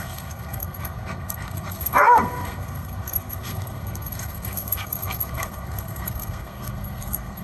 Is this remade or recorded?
remade